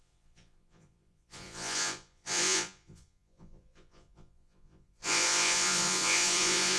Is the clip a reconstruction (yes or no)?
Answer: yes